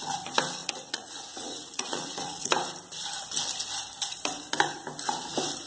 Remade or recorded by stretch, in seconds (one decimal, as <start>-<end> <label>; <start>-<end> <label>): 0.0-0.6 recorded; 0.6-2.5 remade; 2.5-5.7 recorded